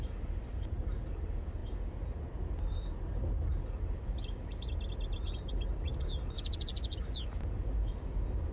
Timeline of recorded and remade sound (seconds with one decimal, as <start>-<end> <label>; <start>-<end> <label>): 0.0-8.5 recorded